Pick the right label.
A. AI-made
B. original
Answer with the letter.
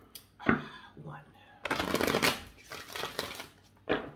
B